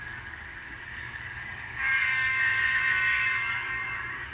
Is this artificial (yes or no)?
yes